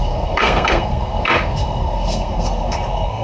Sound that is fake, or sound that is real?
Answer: fake